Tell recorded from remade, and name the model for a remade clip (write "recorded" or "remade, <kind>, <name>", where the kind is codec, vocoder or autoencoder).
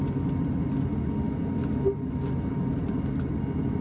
recorded